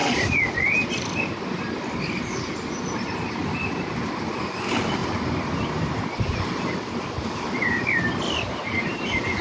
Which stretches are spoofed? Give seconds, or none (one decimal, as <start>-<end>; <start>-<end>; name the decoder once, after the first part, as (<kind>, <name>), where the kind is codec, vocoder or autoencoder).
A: 0.0-4.4 (vocoder, BigVGAN v2); 5.0-9.4